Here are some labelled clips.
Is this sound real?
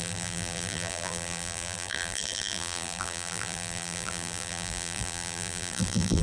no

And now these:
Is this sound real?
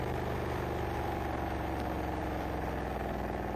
yes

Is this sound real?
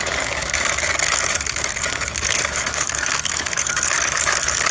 no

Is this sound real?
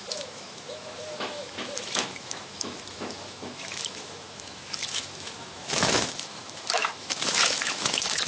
no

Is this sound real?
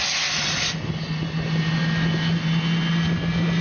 yes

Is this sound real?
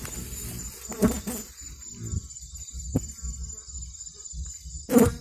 yes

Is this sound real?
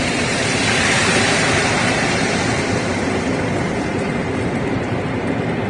no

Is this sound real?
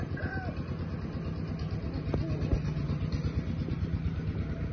yes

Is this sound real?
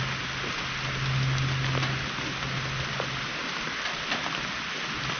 yes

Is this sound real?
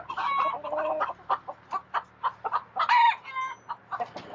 yes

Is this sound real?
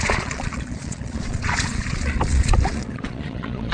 no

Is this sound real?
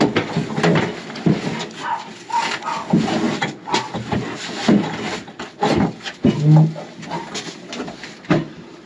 yes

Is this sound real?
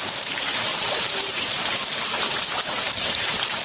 no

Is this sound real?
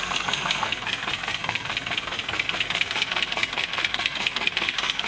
no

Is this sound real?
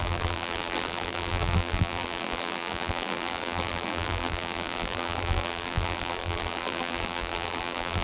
no